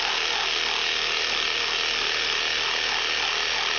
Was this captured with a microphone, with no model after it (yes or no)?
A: yes